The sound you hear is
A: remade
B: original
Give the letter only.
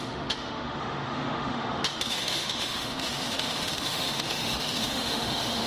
A